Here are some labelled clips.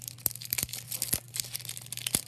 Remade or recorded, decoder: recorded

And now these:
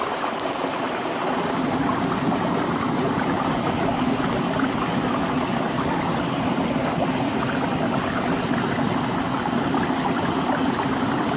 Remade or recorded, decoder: recorded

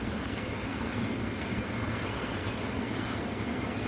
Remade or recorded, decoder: remade, codec, SNAC